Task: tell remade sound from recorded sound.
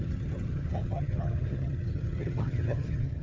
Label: remade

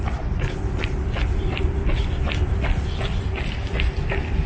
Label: recorded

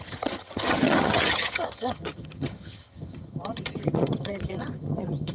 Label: remade